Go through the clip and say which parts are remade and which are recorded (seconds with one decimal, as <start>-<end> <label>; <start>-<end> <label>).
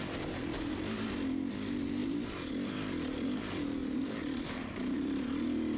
0.0-2.0 recorded; 2.0-2.5 remade; 2.5-3.8 recorded; 3.8-5.8 remade